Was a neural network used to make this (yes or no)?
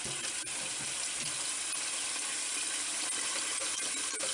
no